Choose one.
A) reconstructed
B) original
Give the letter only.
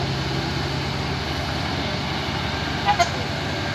B